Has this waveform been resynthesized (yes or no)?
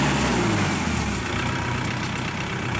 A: no